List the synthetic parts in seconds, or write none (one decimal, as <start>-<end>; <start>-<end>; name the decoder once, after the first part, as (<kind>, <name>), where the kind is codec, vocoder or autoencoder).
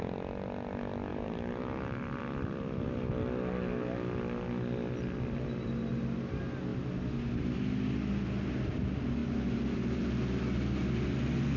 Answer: 1.1-2.2 (vocoder, BigVGAN v2); 9.2-10.0